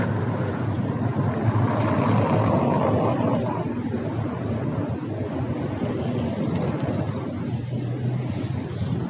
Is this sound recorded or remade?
recorded